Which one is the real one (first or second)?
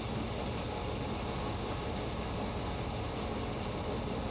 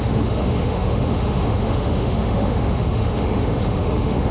first